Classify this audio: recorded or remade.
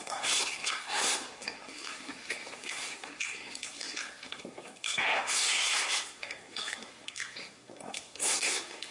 remade